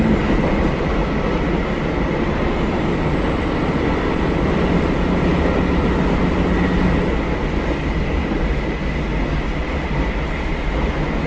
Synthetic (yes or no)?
no